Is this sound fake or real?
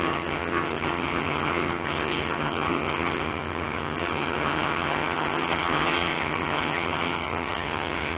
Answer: fake